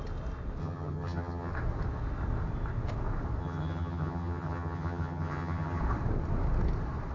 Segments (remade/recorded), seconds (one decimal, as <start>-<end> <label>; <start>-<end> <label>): 0.0-0.6 recorded; 0.6-1.5 remade; 1.5-3.4 recorded; 3.4-5.8 remade; 5.8-7.1 recorded